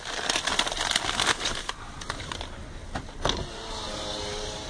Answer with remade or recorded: recorded